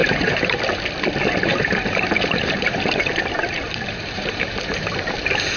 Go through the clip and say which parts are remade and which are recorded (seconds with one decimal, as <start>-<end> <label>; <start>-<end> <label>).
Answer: 0.0-0.6 remade; 0.6-1.5 recorded; 1.5-4.9 remade; 4.9-5.6 recorded